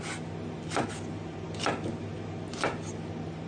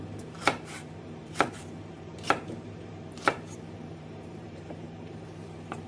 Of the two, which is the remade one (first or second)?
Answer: second